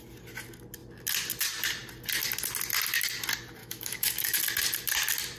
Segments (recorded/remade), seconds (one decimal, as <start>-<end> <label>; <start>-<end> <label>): 0.0-3.6 recorded; 3.6-4.4 remade; 4.4-5.4 recorded